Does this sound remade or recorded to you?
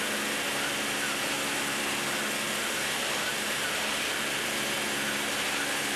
recorded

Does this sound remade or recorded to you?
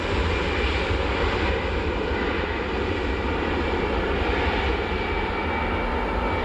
recorded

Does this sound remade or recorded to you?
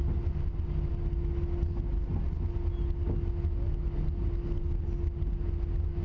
recorded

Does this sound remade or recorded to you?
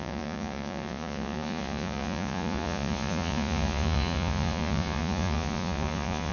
remade